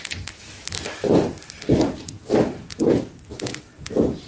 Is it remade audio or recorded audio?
recorded